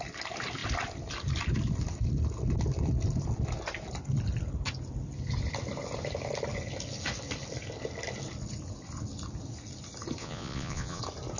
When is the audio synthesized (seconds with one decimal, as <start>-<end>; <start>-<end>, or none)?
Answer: 10.2-11.0